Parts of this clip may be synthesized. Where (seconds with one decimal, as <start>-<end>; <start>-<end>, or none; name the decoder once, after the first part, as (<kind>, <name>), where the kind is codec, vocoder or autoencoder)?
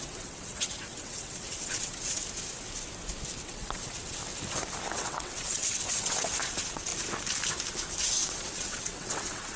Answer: 0.0-2.2 (vocoder, WaveNeXt); 3.4-4.2; 4.9-6.9; 8.0-9.6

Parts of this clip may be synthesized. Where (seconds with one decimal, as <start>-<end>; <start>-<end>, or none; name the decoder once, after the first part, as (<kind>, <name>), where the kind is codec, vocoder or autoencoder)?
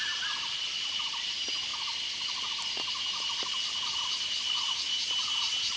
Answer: none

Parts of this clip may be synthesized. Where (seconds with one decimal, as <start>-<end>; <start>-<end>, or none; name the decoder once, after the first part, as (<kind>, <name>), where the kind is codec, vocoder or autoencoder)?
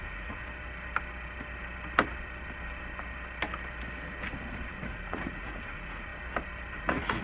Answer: 0.0-0.4 (vocoder, Vocos); 4.7-6.1; 6.8-7.2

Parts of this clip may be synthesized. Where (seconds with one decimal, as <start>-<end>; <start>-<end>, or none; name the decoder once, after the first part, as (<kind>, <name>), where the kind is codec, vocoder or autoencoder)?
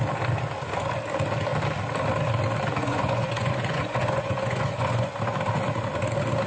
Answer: 2.8-5.1 (vocoder, Vocos)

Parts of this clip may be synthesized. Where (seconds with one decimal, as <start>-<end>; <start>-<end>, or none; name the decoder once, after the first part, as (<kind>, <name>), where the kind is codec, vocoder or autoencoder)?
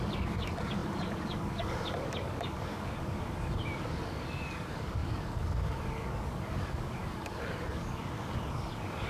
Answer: 0.0-9.1 (codec, DAC)